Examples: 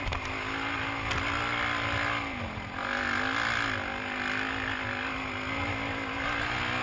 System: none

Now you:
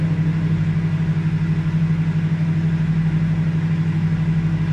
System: none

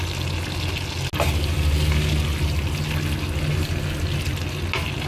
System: none